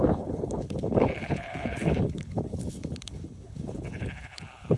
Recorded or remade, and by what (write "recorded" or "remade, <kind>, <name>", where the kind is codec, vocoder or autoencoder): remade, codec, HILCodec